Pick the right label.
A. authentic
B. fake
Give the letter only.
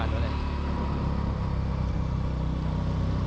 A